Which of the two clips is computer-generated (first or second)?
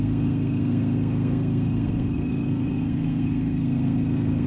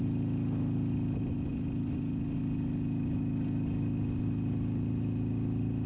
first